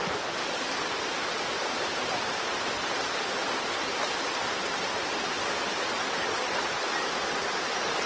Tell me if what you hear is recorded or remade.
recorded